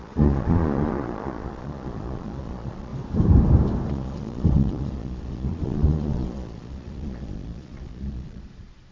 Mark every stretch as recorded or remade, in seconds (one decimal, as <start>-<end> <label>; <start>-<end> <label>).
0.0-2.9 remade; 2.9-3.9 recorded; 3.9-8.9 remade